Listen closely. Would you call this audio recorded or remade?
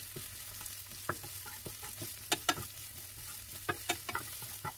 recorded